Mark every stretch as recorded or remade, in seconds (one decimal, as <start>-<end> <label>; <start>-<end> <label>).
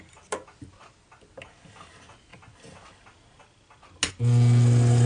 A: 0.0-5.1 recorded